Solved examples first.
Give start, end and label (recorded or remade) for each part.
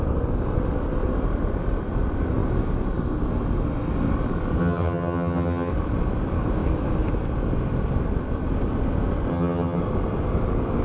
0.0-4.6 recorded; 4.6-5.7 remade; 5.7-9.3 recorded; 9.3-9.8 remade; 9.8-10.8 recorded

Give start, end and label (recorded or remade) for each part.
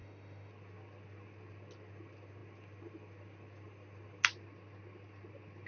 0.0-0.5 remade; 0.5-5.7 recorded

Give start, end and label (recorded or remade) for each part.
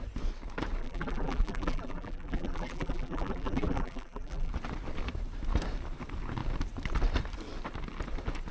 0.0-0.8 recorded; 0.8-4.5 remade; 4.5-8.5 recorded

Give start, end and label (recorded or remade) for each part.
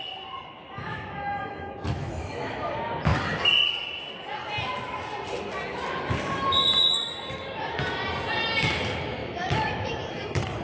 0.0-0.8 recorded; 0.8-2.7 remade; 2.7-9.2 recorded; 9.2-10.0 remade; 10.0-10.6 recorded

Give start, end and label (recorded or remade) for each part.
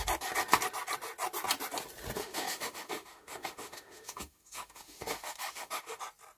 0.0-2.2 recorded; 2.2-6.0 remade; 6.0-6.4 recorded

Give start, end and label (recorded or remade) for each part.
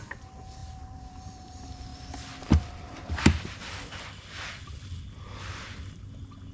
0.0-6.5 recorded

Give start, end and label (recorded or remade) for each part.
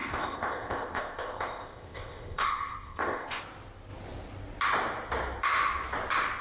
0.0-3.4 remade; 3.4-6.4 recorded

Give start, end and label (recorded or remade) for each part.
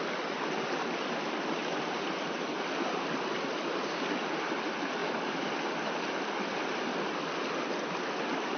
0.0-1.6 recorded; 1.6-3.4 remade; 3.4-5.0 recorded; 5.0-6.5 remade; 6.5-8.6 recorded